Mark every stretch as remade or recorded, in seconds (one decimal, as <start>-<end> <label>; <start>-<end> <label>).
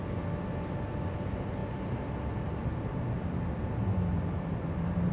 0.0-5.1 recorded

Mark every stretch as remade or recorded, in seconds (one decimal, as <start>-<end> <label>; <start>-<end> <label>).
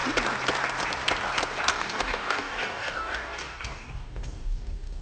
0.0-1.7 recorded; 1.7-5.0 remade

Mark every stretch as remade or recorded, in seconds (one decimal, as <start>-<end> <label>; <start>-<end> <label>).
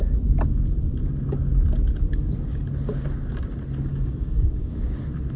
0.0-3.9 recorded; 3.9-5.0 remade; 5.0-5.4 recorded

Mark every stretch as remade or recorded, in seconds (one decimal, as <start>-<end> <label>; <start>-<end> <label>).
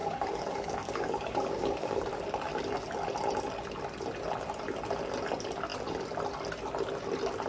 0.0-2.1 remade; 2.1-7.5 recorded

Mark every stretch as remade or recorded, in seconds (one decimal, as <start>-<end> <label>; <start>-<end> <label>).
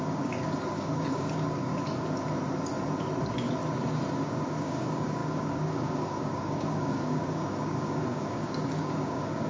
0.0-1.7 remade; 1.7-4.2 recorded; 4.2-9.5 remade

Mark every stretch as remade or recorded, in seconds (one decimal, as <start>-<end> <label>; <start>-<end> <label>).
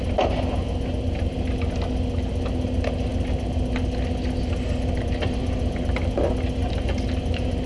0.0-7.7 recorded